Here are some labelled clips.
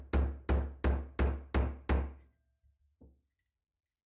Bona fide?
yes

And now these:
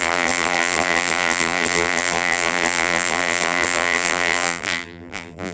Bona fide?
no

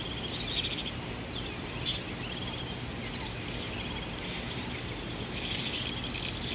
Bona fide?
yes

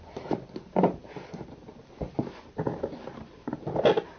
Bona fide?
yes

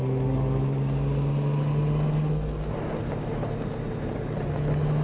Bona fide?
yes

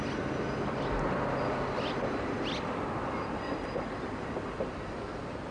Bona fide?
yes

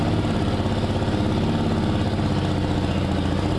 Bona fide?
yes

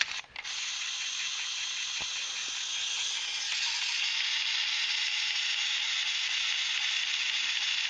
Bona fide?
yes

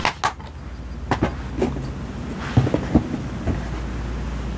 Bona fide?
yes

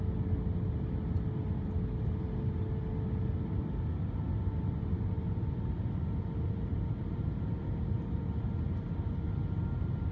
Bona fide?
yes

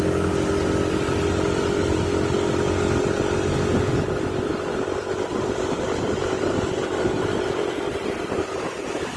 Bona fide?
yes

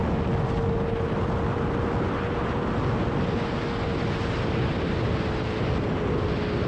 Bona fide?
yes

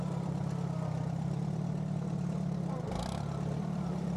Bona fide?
no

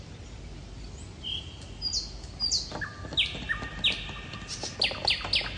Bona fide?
yes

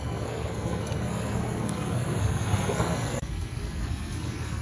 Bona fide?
no